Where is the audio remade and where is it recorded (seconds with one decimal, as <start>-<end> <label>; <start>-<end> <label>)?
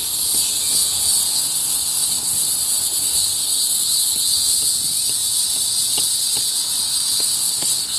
0.0-1.3 recorded; 1.3-2.5 remade; 2.5-3.0 recorded; 3.0-3.6 remade; 3.6-7.2 recorded; 7.2-8.0 remade